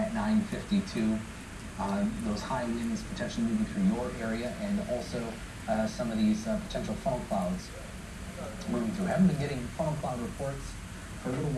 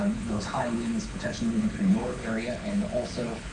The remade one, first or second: second